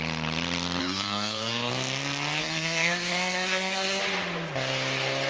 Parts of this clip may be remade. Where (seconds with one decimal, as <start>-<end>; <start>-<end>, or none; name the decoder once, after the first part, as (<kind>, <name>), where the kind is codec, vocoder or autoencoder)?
0.8-1.7 (codec, SNAC); 2.4-4.0